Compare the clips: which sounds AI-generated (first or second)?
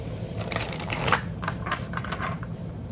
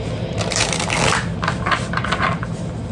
first